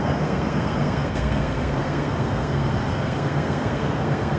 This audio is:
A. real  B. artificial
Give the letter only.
B